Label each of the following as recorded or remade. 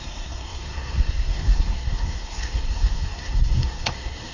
remade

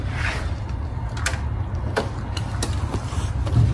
recorded